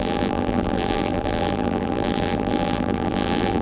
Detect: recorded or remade remade